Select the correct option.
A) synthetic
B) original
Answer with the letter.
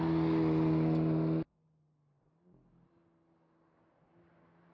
B